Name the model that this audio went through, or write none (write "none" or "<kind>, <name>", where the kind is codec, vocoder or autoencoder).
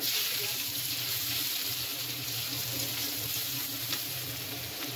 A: vocoder, BigVGAN v2